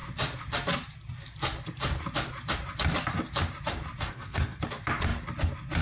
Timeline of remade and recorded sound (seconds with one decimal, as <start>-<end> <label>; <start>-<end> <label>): 0.0-4.1 recorded; 4.1-4.6 remade; 4.6-5.8 recorded